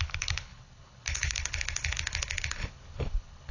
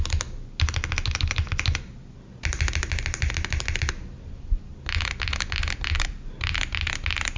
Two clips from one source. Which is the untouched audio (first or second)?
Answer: second